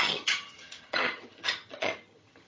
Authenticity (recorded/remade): remade